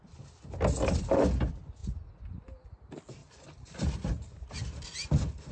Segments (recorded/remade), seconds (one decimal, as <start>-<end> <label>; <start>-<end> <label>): 0.0-3.2 recorded; 3.2-4.5 remade; 4.5-5.5 recorded